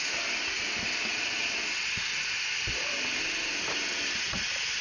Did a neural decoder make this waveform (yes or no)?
no